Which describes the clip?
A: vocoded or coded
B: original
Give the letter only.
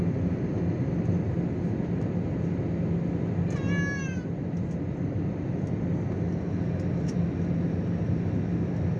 B